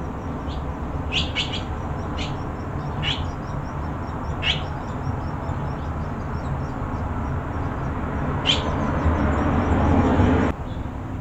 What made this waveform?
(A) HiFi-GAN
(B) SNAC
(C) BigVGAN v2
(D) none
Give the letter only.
D